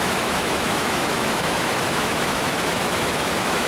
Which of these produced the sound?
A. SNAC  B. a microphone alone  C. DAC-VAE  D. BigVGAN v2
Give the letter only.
C